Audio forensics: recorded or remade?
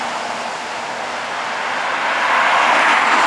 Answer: recorded